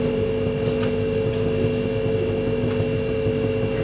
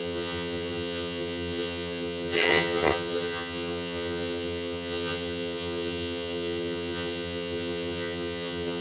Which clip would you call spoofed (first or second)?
second